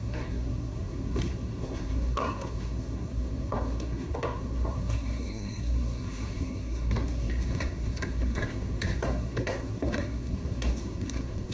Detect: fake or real fake